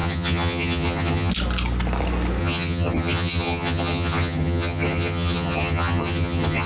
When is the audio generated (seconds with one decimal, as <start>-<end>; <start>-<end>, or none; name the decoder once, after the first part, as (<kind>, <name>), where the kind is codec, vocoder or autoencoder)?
0.0-1.3 (vocoder, HiFi-GAN); 2.4-6.7